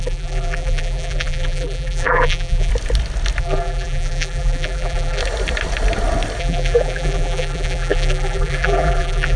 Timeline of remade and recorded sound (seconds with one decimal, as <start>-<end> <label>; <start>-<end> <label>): 0.0-2.7 remade; 2.7-3.4 recorded; 3.4-5.2 remade; 5.2-6.4 recorded; 6.4-9.4 remade